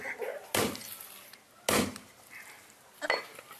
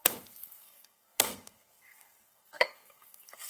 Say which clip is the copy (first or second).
second